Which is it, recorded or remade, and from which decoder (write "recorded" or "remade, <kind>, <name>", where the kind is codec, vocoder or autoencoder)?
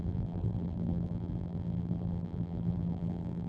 remade, vocoder, BigVGAN v2